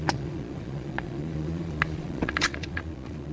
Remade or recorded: remade